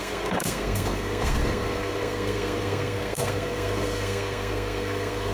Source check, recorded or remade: remade